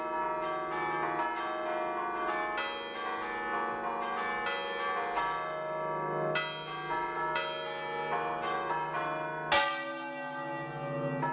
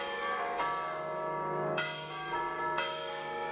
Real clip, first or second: first